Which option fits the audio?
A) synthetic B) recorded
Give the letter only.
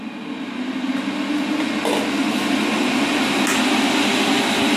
B